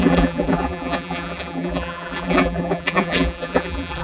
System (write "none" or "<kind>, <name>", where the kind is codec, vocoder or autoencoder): vocoder, BigVGAN v2